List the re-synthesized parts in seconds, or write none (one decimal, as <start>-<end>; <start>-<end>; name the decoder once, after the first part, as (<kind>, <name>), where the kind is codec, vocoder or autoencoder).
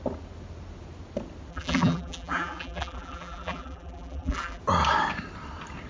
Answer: 1.5-4.6 (vocoder, BigVGAN v2)